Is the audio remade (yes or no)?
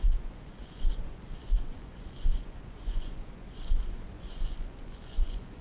yes